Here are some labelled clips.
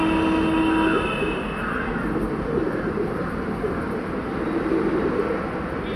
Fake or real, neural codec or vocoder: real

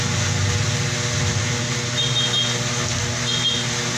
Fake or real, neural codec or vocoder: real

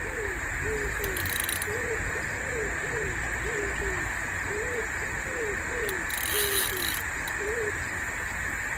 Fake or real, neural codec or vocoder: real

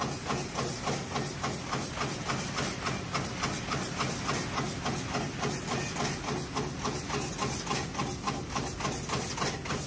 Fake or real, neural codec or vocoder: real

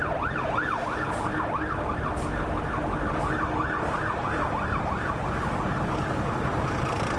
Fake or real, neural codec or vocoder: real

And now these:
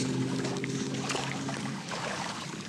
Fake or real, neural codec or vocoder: fake, codec, DAC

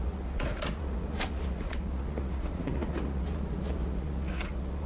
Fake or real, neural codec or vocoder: fake, vocoder, Vocos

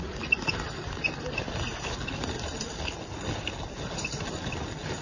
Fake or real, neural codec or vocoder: real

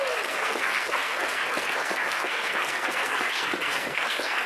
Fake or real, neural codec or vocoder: fake, codec, SNAC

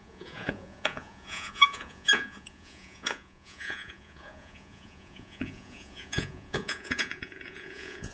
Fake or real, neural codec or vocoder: fake, vocoder, Vocos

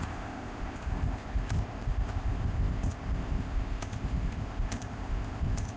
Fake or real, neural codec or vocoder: fake, codec, ZipCodec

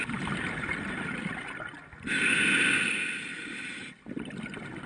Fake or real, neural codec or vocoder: real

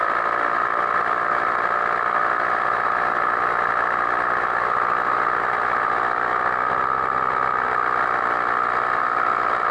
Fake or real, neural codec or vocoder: real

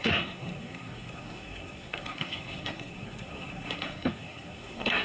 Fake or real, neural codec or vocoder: fake, codec, SNAC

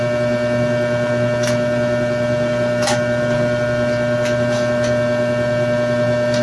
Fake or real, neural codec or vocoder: real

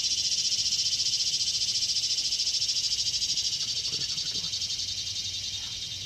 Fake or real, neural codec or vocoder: real